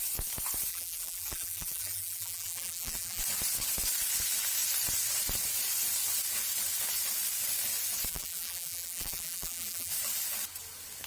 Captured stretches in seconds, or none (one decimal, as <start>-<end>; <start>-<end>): 0.0-0.7; 3.2-8.1; 9.9-11.1